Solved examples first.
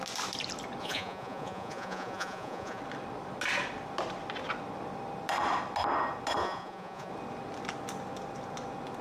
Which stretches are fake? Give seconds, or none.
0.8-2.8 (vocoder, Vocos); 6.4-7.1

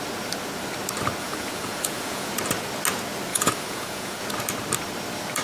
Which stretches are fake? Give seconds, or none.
1.2-2.3 (vocoder, Vocos); 3.3-4.2

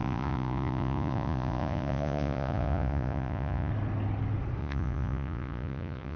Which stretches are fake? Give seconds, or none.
0.0-3.7 (vocoder, Vocos); 4.6-6.2

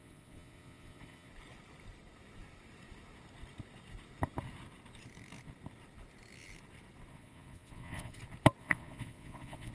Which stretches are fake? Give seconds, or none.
0.0-1.3 (vocoder, Vocos); 7.1-8.2; 8.6-9.7

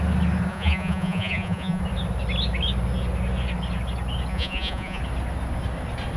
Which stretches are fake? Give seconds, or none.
0.5-1.8 (vocoder, Vocos); 4.3-5.0

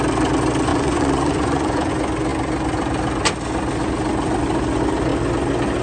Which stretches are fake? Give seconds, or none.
0.7-1.9 (vocoder, Vocos)

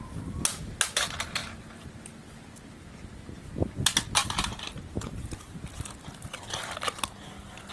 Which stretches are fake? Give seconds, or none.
none

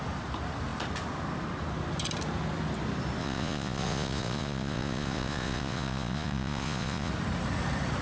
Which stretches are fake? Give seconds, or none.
3.2-7.1 (vocoder, Vocos)